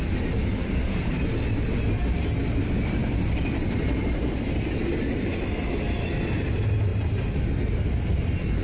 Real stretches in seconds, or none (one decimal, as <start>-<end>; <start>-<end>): 0.0-0.6; 1.2-3.0; 4.4-6.9; 7.4-8.6